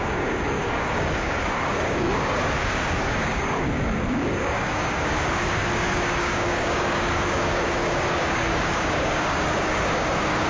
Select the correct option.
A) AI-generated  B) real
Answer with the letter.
A